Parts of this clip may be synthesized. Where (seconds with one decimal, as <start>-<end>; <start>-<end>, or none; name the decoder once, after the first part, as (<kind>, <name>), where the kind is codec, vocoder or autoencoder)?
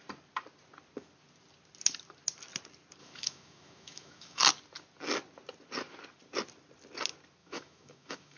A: 3.0-4.4 (autoencoder, DAC-VAE); 7.4-8.4